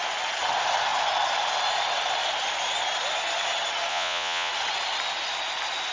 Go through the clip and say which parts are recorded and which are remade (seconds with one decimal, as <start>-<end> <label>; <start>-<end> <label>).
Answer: 0.0-3.9 recorded; 3.9-4.5 remade; 4.5-5.9 recorded